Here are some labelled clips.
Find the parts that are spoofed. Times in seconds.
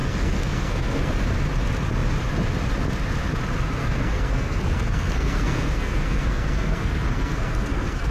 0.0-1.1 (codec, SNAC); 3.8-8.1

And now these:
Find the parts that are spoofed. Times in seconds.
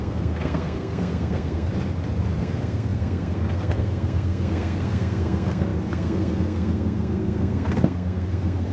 0.0-1.7 (codec, SNAC); 2.4-8.7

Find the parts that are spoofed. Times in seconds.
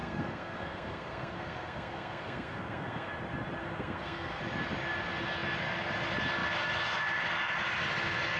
0.0-3.1 (codec, SNAC); 3.6-4.4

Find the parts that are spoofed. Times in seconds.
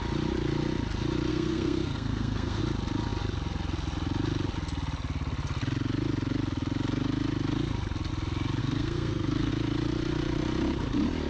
1.3-2.6 (codec, SNAC); 8.6-9.5